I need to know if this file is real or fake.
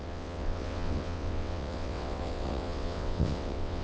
fake